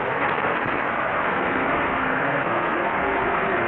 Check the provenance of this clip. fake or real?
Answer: fake